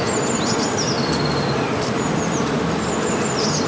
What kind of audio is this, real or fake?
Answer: real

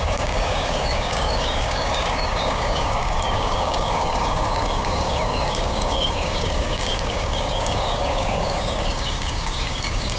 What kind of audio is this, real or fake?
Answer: fake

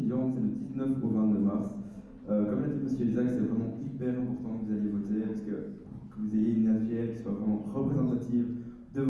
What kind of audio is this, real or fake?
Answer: real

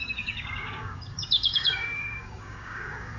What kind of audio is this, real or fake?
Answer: fake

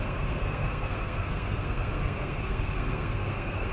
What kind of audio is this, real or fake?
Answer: fake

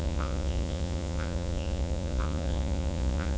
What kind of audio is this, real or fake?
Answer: fake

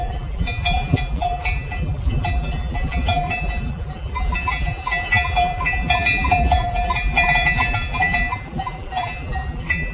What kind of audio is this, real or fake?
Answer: fake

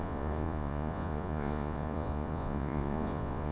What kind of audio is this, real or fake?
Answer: fake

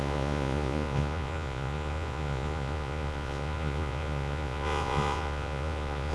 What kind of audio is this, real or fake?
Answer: fake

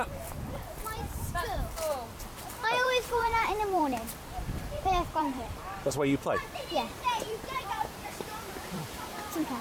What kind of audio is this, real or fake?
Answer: fake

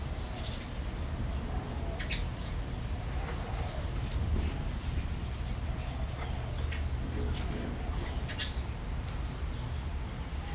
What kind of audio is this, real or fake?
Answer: real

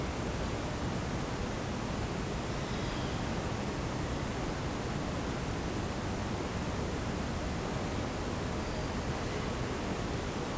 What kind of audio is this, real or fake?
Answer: real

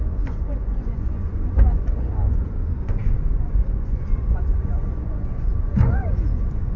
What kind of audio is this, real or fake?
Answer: fake